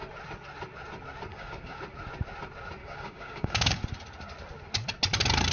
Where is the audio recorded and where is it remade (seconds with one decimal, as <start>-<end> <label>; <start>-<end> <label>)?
0.0-1.3 recorded; 1.3-1.8 remade; 1.8-2.8 recorded; 2.8-3.8 remade; 3.8-5.5 recorded